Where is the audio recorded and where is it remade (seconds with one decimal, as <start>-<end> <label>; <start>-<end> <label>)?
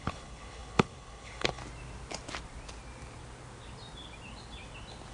0.0-1.6 remade; 1.6-5.1 recorded